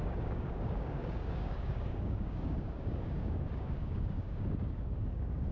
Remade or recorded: remade